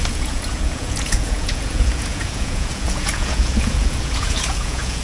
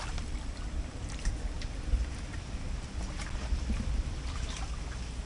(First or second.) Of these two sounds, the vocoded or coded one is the first